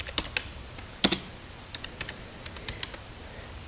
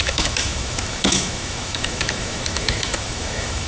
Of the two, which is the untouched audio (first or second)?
first